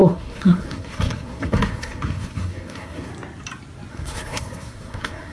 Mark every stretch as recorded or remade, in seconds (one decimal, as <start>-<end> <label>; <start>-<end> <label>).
0.0-3.1 remade; 3.1-3.9 recorded; 3.9-5.3 remade